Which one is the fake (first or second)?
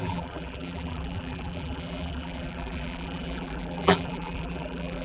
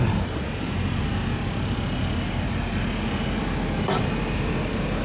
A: first